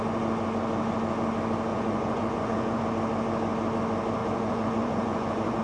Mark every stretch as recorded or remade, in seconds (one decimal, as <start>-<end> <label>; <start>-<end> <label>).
0.0-1.7 recorded; 1.7-2.8 remade; 2.8-4.2 recorded; 4.2-5.6 remade